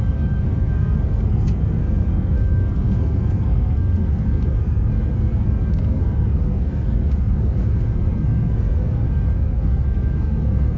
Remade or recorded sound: remade